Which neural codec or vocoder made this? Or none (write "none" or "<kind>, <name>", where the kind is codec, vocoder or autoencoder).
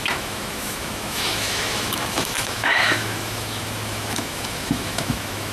autoencoder, DAC-VAE